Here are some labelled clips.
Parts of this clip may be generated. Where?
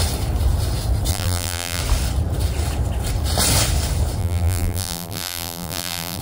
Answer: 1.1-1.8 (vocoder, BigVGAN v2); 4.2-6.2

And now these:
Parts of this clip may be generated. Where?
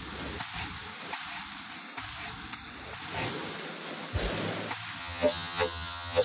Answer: 5.0-6.2 (vocoder, HiFi-GAN)